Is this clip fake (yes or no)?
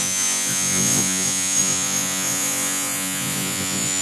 yes